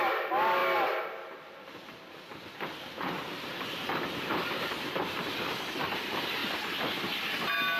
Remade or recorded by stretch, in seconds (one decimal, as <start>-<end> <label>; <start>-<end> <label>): 0.0-7.8 recorded